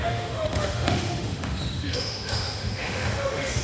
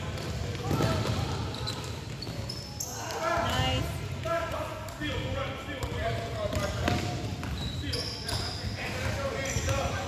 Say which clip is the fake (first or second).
first